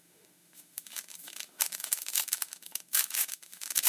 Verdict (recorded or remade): remade